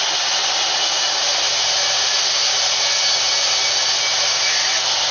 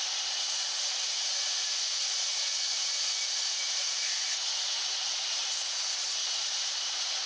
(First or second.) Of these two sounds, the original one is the first